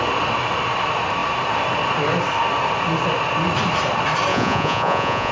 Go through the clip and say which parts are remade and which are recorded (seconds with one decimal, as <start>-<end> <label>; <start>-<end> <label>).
0.0-4.3 recorded; 4.3-5.3 remade